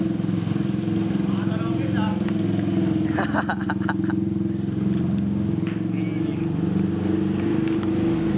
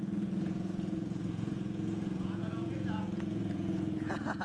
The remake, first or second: second